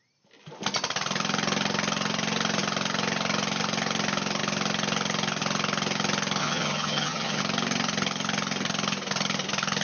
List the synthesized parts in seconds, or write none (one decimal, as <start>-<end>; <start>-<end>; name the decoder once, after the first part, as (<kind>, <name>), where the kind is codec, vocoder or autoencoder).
6.4-7.4 (vocoder, HiFi-GAN)